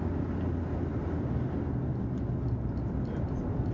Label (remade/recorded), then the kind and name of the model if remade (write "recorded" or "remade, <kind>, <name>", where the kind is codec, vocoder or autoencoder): recorded